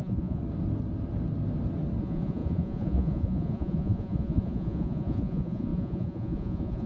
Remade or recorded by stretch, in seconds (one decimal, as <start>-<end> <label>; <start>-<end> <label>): 0.0-0.4 remade; 0.4-2.0 recorded; 2.0-6.9 remade